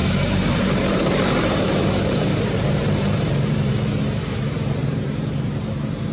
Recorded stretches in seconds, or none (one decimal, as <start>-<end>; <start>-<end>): 3.7-4.8; 5.6-6.1